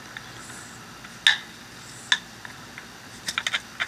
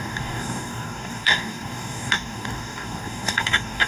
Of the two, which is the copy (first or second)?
second